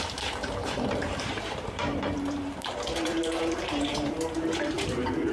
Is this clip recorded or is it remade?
remade